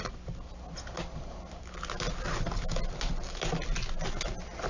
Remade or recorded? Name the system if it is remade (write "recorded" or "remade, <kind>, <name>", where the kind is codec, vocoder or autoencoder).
recorded